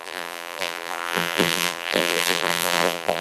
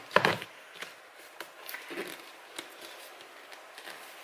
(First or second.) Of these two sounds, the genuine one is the second